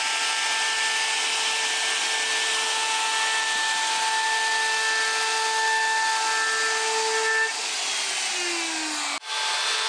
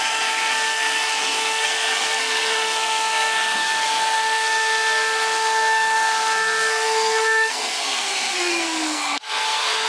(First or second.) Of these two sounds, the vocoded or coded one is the second